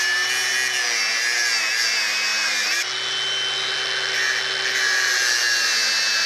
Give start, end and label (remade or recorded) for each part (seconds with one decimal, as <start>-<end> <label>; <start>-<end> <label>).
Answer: 0.0-6.3 recorded